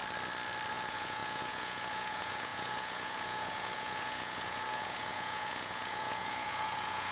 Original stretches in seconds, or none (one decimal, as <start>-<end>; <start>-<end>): 0.0-0.7